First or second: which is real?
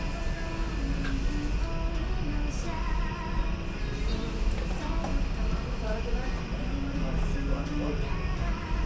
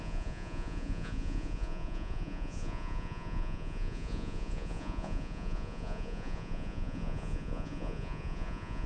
first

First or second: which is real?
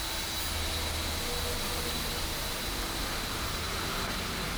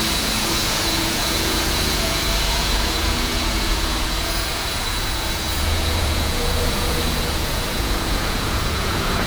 first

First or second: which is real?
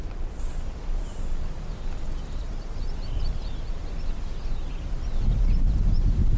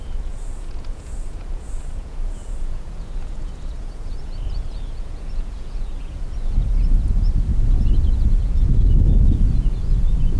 first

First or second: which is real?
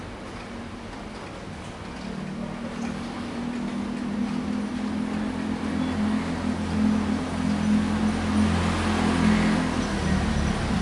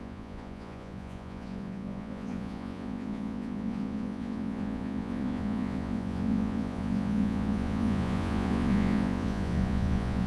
first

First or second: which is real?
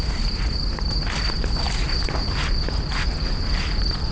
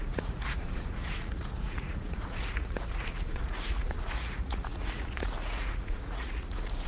first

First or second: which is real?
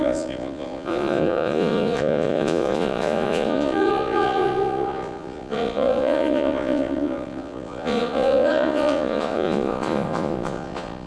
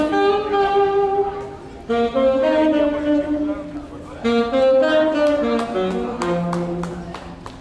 second